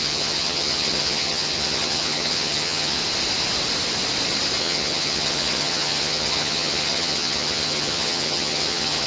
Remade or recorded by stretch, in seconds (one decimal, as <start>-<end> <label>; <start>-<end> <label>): 0.0-3.0 remade; 3.0-4.6 recorded; 4.6-9.1 remade